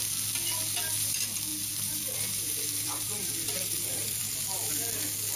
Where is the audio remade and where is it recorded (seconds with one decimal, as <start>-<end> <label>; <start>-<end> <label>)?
0.0-1.5 recorded; 1.5-4.7 remade; 4.7-5.4 recorded